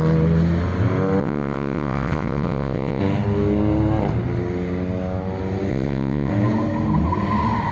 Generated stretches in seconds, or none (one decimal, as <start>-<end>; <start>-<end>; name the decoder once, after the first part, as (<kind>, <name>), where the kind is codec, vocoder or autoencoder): 1.2-3.0 (vocoder, WaveNeXt); 5.7-6.3